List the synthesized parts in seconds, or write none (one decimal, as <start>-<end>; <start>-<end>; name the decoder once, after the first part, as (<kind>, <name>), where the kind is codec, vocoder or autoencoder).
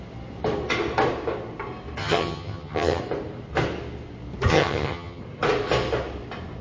2.0-3.0 (vocoder, HiFi-GAN); 4.5-5.2